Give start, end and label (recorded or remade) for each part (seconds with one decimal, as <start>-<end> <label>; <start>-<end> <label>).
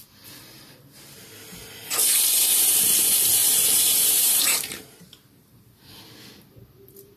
0.0-3.4 recorded; 3.4-6.1 remade; 6.1-7.2 recorded